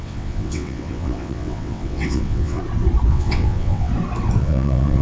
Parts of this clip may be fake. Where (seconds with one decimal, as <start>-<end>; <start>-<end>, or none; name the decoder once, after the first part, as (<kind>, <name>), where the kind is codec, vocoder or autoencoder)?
0.0-2.6 (vocoder, WaveNeXt); 3.1-3.9; 4.4-5.0